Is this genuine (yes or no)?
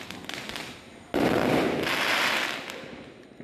yes